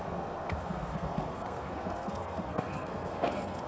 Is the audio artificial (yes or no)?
yes